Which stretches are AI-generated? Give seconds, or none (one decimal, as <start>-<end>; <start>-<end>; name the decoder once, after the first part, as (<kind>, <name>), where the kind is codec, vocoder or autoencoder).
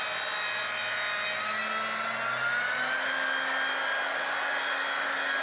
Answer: none